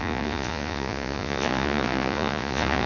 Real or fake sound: fake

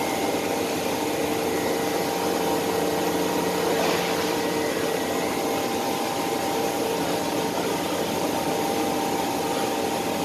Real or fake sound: fake